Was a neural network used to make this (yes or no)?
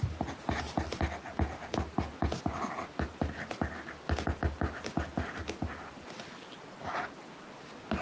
no